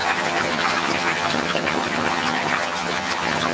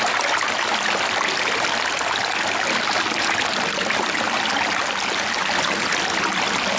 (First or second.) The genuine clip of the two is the second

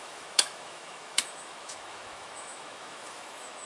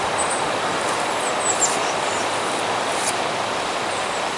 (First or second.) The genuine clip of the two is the second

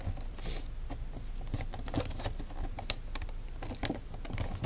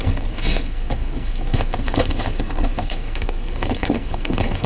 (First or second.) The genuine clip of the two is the first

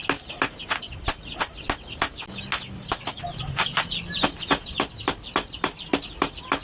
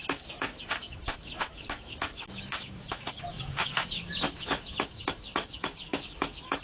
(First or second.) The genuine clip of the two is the first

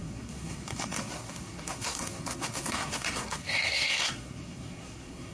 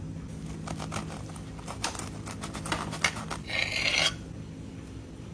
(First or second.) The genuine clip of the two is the second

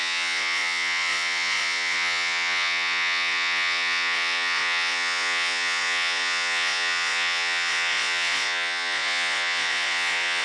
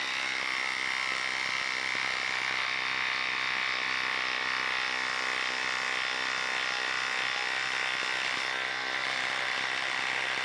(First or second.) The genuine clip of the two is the second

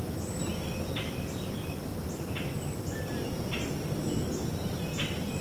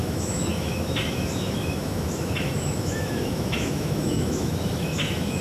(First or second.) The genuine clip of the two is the first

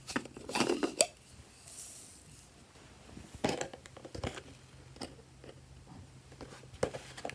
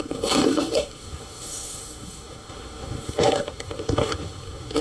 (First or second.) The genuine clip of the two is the first